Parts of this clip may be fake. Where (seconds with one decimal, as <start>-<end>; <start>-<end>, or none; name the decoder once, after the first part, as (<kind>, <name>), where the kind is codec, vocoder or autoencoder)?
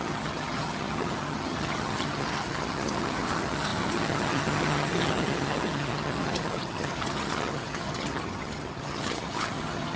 0.0-10.0 (vocoder, HiFi-GAN)